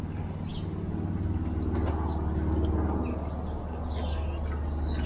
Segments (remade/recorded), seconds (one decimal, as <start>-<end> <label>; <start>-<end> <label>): 0.0-5.1 recorded